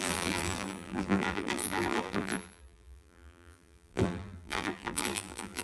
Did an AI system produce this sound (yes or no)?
yes